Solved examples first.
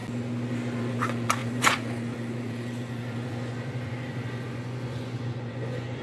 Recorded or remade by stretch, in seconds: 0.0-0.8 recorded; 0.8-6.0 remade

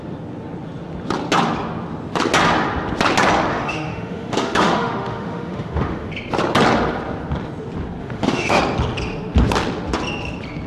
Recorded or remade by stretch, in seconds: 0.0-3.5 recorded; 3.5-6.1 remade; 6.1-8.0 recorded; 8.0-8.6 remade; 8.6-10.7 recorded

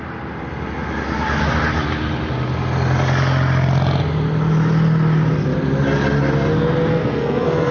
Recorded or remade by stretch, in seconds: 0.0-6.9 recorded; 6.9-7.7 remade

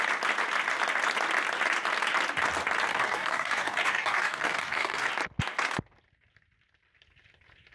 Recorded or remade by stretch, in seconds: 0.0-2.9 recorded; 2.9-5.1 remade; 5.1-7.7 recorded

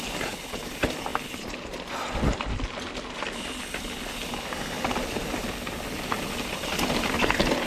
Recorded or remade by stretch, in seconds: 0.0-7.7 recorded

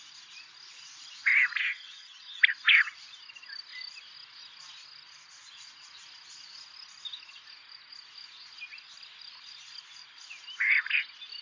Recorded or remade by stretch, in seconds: 0.0-1.6 recorded; 1.6-2.4 remade; 2.4-11.4 recorded

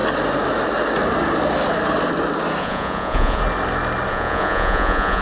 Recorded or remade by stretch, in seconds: 0.0-2.6 recorded; 2.6-3.4 remade; 3.4-4.1 recorded; 4.1-5.2 remade

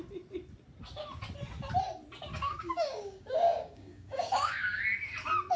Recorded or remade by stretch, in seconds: 0.0-2.3 recorded; 2.3-4.8 remade; 4.8-5.6 recorded